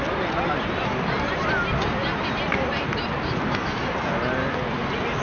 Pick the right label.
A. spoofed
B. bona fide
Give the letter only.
B